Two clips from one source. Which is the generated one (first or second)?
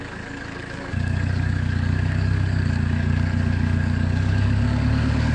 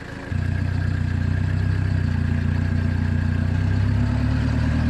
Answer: first